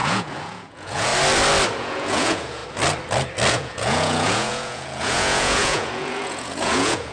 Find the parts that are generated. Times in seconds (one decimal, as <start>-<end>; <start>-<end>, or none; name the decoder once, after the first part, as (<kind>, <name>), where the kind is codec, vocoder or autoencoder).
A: 0.0-1.1 (vocoder, Vocos); 1.8-2.6; 3.5-7.1